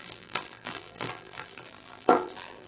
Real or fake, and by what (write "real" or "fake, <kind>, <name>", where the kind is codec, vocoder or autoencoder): fake, vocoder, BigVGAN v2